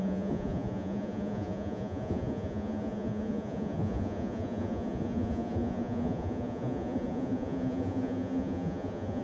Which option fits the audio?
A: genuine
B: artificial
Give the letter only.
B